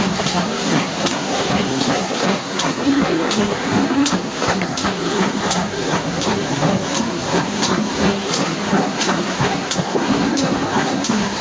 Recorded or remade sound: remade